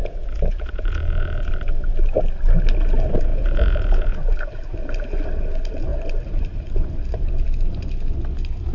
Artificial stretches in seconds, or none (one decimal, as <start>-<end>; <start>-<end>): 0.0-1.5; 3.3-4.4